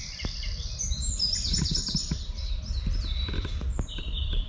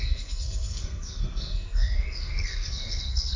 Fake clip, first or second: second